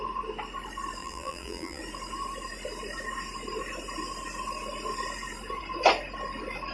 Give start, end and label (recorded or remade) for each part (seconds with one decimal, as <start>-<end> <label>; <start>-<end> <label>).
0.0-1.0 recorded; 1.0-1.8 remade; 1.8-6.7 recorded